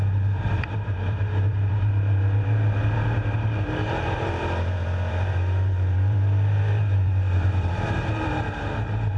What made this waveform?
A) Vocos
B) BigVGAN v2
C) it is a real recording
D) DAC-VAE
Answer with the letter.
B